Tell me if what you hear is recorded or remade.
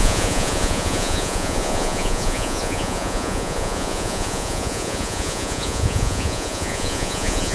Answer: remade